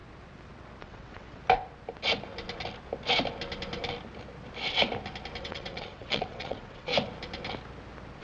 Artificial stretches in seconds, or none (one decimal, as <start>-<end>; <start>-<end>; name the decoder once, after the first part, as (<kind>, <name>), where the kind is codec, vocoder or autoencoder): 0.8-1.4 (vocoder, WaveNeXt); 5.4-6.9

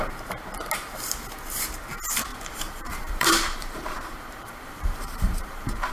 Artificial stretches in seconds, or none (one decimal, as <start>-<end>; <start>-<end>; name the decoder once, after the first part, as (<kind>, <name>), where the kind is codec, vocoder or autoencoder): 2.3-5.9 (vocoder, BigVGAN v2)

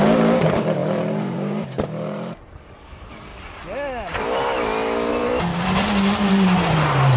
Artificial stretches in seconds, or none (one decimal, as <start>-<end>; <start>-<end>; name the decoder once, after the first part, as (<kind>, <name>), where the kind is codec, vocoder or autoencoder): 0.0-3.3 (vocoder, BigVGAN v2); 5.1-7.2

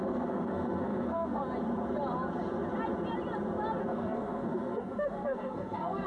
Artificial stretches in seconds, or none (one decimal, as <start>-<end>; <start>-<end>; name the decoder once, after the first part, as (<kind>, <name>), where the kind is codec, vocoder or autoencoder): 0.0-1.4 (codec, SNAC); 3.8-6.1

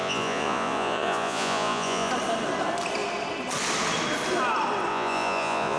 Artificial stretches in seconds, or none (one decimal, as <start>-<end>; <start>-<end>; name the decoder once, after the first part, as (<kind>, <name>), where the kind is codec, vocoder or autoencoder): 0.0-2.1 (vocoder, Vocos); 4.9-5.8

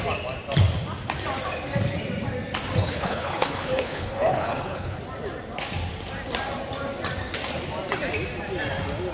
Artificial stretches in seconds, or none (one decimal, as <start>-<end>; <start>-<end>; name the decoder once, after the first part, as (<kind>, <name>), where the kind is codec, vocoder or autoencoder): 2.8-5.0 (codec, HILCodec)

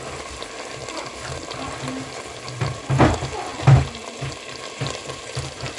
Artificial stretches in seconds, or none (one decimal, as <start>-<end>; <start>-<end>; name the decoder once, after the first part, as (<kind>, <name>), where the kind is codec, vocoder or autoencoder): none

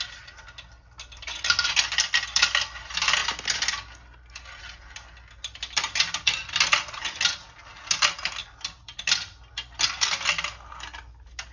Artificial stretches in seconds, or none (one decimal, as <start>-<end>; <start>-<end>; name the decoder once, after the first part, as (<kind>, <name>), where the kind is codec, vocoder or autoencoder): none